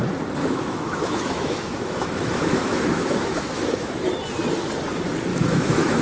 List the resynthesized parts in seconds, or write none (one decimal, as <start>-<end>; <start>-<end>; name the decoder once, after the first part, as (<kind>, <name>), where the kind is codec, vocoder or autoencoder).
0.4-4.0 (autoencoder, DAC-VAE); 5.3-6.0